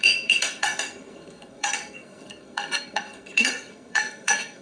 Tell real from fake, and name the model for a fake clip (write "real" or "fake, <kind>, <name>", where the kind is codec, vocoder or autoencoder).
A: fake, codec, SNAC